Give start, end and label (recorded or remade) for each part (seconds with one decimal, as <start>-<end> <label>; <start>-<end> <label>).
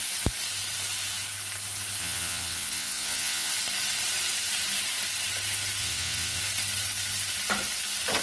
0.0-2.0 recorded; 2.0-3.5 remade; 3.5-5.8 recorded; 5.8-6.4 remade; 6.4-8.2 recorded